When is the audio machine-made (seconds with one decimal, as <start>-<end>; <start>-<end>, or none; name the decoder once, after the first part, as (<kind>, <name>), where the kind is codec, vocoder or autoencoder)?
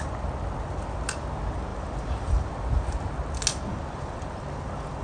1.7-2.5 (vocoder, BigVGAN v2); 3.7-5.0